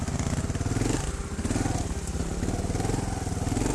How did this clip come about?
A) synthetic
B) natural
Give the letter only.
B